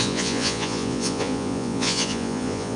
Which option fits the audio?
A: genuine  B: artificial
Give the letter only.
B